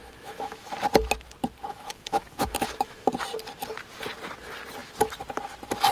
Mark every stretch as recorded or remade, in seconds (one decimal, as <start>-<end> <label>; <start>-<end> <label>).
0.0-0.7 remade; 0.7-1.7 recorded; 1.7-3.1 remade; 3.1-5.9 recorded